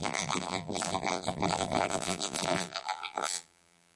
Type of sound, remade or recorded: remade